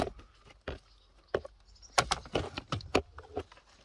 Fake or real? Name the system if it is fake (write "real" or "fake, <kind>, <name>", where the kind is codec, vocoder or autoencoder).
real